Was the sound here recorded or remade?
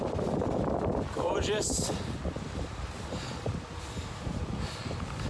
remade